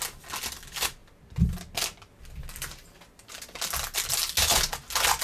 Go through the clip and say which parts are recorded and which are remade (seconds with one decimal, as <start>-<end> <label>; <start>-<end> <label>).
0.0-5.2 recorded